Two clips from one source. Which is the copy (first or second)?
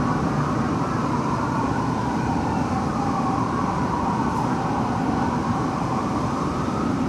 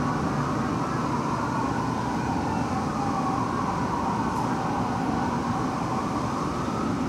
first